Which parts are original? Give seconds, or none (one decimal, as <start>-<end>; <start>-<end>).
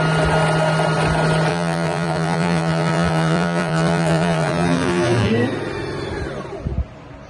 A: 0.0-1.5; 5.3-7.3